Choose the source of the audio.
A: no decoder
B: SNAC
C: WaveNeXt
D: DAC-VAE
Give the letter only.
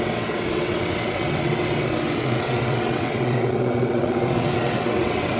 C